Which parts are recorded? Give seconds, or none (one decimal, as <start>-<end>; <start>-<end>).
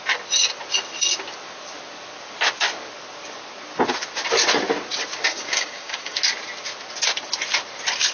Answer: 0.0-5.3; 6.2-8.1